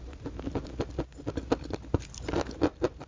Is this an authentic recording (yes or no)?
yes